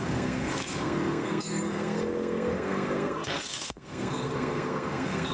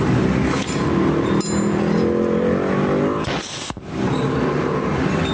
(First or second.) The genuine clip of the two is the second